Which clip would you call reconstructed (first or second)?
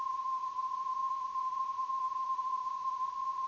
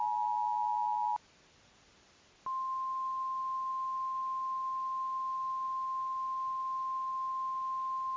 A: first